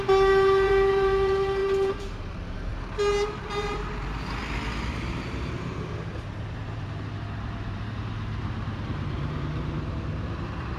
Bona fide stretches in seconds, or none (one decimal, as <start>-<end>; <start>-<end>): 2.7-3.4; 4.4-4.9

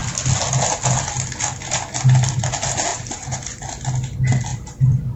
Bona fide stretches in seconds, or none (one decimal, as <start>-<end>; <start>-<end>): 0.0-2.9; 3.6-4.5

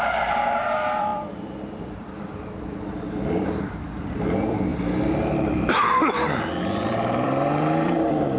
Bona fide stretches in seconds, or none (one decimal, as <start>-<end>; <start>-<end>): 4.7-5.8

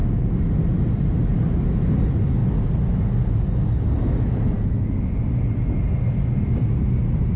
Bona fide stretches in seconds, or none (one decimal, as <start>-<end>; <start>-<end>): 0.0-7.4